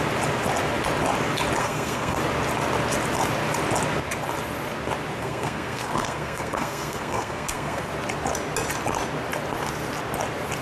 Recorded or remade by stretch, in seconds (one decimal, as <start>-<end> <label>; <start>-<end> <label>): 0.0-1.6 recorded; 1.6-2.2 remade; 2.2-5.2 recorded; 5.2-7.9 remade; 7.9-10.6 recorded